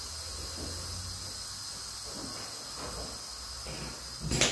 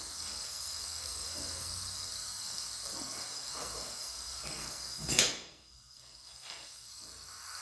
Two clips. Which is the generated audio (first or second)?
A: second